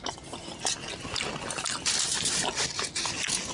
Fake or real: real